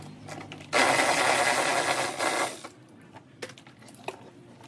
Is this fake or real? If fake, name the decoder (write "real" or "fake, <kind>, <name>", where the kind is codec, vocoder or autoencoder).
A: real